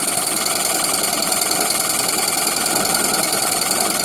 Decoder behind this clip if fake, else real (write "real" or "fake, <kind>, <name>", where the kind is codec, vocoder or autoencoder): real